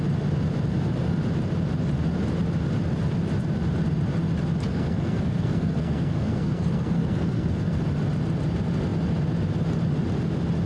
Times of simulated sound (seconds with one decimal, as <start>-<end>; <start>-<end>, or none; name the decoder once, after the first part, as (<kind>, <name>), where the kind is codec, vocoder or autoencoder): 4.7-7.8 (codec, SNAC)